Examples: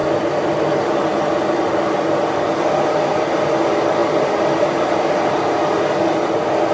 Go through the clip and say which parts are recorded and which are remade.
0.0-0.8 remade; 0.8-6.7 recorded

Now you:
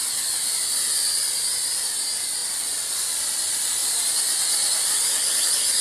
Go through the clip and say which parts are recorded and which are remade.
0.0-2.4 remade; 2.4-3.2 recorded; 3.2-3.8 remade; 3.8-4.7 recorded; 4.7-5.8 remade

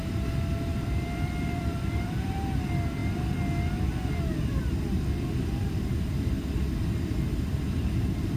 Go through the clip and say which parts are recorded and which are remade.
0.0-3.0 remade; 3.0-5.5 recorded; 5.5-8.4 remade

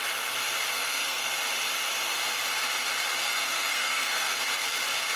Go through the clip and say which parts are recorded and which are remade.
0.0-0.7 recorded; 0.7-1.3 remade; 1.3-3.2 recorded; 3.2-4.4 remade; 4.4-5.2 recorded

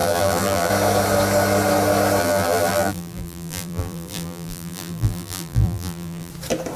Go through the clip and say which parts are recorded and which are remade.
0.0-0.7 remade; 0.7-2.2 recorded; 2.2-6.3 remade; 6.3-6.8 recorded